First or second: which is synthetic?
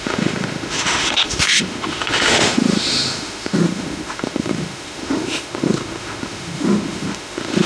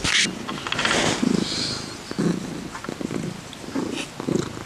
first